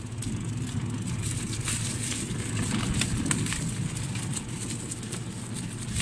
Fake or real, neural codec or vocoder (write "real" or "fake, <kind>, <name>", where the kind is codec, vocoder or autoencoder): real